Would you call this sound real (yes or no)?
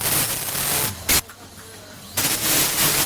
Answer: yes